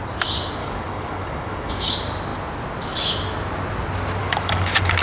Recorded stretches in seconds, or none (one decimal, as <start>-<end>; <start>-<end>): 0.0-0.6; 1.9-4.2